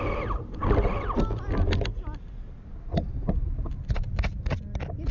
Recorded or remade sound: recorded